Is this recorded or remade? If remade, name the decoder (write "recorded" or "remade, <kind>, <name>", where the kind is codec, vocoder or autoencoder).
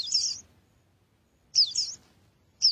recorded